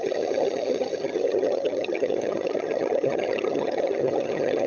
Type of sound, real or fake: fake